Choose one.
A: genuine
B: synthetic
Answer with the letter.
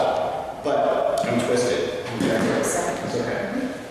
A